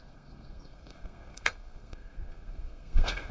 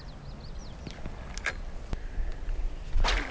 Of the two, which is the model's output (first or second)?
first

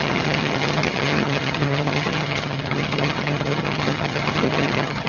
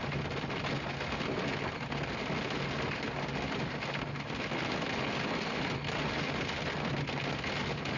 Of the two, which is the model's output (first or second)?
first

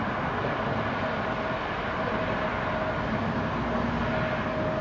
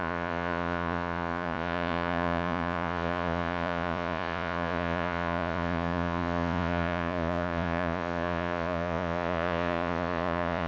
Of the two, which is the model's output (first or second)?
second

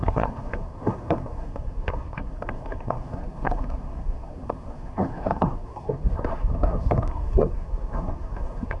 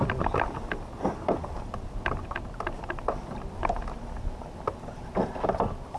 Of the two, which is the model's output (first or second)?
first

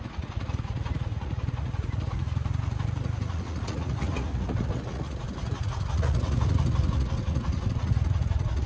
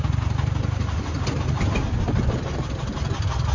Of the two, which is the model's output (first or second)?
first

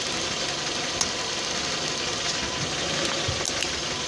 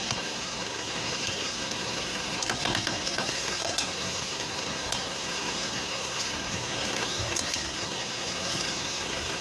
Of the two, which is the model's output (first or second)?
second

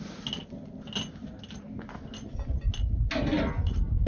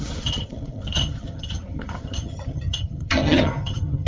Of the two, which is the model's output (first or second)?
second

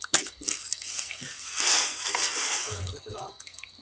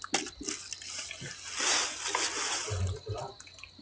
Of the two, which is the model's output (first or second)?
first